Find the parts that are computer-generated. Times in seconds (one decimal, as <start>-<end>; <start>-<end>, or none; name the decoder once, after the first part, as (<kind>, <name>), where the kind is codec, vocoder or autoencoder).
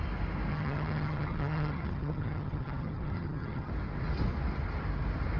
0.5-3.7 (vocoder, HiFi-GAN)